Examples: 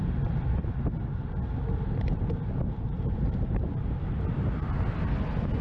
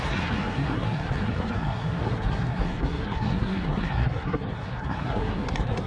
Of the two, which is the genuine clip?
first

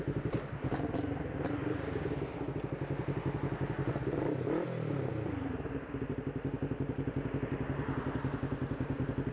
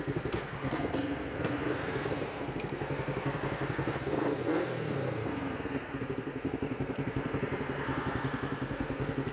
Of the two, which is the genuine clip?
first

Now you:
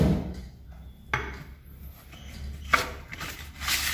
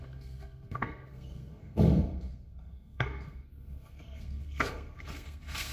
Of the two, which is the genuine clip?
first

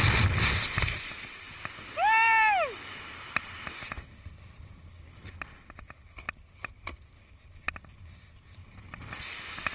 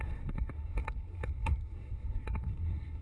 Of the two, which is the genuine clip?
first